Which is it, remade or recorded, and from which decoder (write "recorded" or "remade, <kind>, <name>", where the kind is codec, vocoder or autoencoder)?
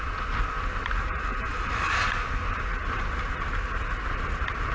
recorded